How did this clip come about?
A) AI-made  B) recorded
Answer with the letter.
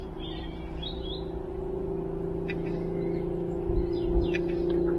B